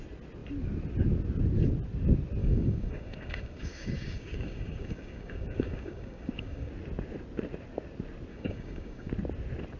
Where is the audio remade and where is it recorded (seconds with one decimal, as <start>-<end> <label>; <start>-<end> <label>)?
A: 0.0-2.4 recorded; 2.4-6.7 remade; 6.7-8.3 recorded; 8.3-9.1 remade; 9.1-9.8 recorded